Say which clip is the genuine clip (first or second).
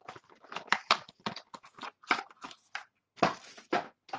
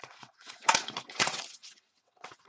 first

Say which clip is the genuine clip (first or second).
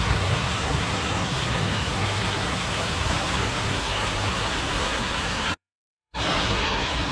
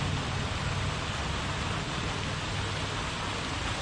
second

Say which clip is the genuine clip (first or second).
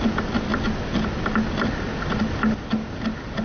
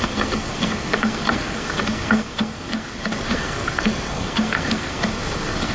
first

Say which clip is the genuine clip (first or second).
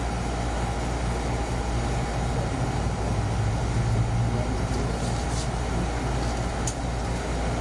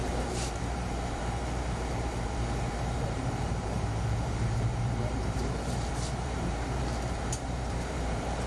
first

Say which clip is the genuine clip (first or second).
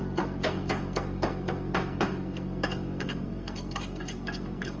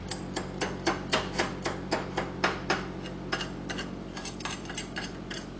second